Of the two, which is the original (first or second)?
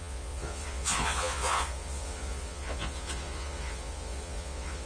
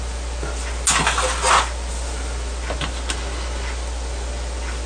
second